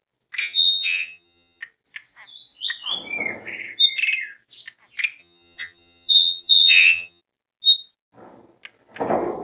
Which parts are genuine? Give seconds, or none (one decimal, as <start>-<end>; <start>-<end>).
0.0-0.4; 1.6-5.2; 7.2-9.4